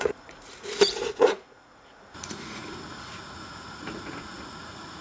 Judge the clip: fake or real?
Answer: fake